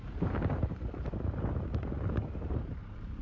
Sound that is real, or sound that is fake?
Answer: fake